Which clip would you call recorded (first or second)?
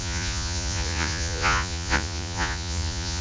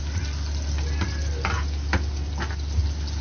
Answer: second